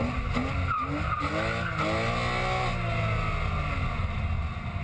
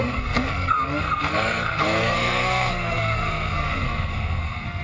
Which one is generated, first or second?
second